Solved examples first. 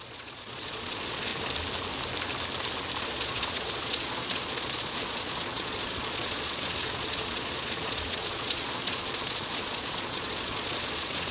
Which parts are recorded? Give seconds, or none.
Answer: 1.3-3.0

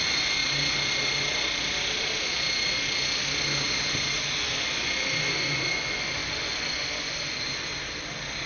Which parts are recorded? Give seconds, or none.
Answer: 0.4-4.4; 7.7-8.5

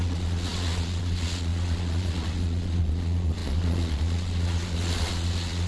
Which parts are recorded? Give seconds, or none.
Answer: none

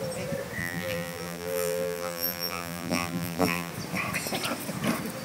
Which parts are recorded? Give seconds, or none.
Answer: 0.0-0.6; 3.7-5.2